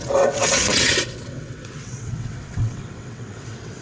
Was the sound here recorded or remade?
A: remade